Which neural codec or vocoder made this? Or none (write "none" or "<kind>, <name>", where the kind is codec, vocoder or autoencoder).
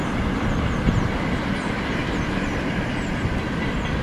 none